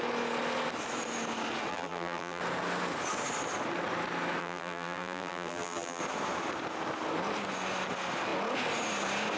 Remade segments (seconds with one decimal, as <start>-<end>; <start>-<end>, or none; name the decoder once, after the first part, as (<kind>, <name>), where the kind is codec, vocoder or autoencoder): 1.7-2.4 (vocoder, BigVGAN v2); 4.4-6.0